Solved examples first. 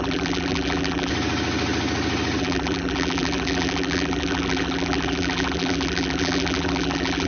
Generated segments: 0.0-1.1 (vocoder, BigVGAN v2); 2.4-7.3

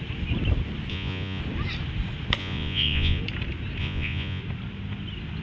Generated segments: 0.9-1.4 (vocoder, Vocos); 2.4-3.2; 3.8-4.4